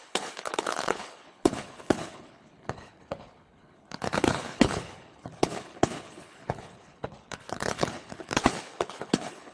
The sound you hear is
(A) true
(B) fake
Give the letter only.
B